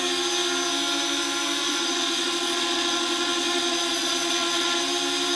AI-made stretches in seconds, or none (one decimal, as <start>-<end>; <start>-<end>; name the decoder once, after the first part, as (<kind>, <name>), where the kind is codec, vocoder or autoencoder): 1.6-4.8 (vocoder, Vocos)